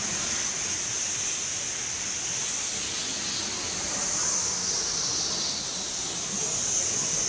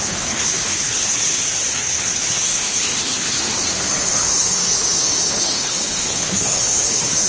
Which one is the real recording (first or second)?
first